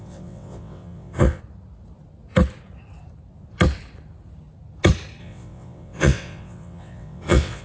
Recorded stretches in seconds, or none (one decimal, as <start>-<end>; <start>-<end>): 1.4-5.2